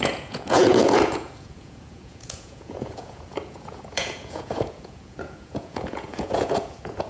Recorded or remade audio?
remade